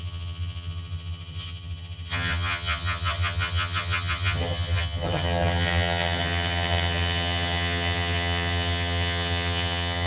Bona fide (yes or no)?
no